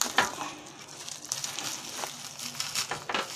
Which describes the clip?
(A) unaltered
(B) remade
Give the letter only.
A